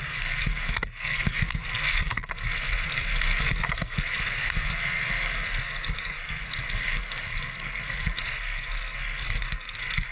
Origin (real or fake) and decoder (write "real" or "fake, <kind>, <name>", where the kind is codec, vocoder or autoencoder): fake, codec, SNAC